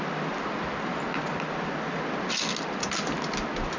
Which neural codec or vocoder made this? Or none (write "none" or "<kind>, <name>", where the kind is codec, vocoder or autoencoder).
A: none